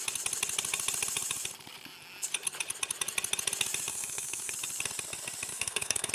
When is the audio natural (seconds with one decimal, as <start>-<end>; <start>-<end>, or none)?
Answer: 0.0-3.9; 4.5-5.5